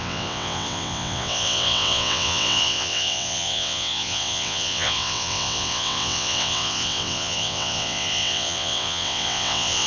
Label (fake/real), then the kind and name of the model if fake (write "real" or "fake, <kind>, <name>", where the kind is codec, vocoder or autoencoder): fake, vocoder, WaveNeXt